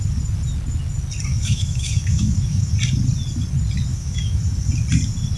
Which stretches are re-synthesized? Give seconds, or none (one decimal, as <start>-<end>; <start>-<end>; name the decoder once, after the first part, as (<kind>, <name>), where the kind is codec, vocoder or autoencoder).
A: 1.3-2.7 (autoencoder, DAC-VAE); 3.9-4.4

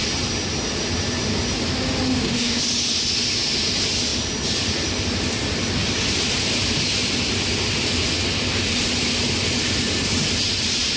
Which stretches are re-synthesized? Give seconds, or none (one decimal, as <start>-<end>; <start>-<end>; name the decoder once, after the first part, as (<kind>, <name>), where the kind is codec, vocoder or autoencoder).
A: 2.1-2.6 (autoencoder, DAC-VAE)